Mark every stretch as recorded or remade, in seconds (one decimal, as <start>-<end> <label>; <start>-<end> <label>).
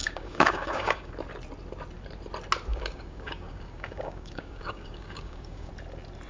0.0-1.1 remade; 1.1-2.7 recorded; 2.7-5.7 remade; 5.7-6.3 recorded